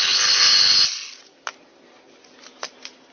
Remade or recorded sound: recorded